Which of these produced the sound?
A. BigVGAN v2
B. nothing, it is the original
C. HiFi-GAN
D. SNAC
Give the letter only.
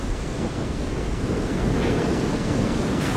D